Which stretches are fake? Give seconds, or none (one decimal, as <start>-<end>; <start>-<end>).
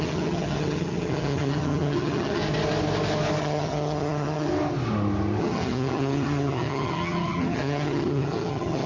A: 0.0-2.4; 3.4-4.5; 5.4-8.9